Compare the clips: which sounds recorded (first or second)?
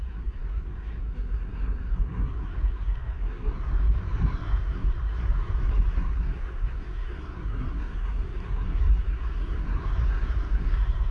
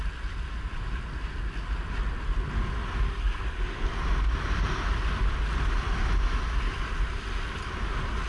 second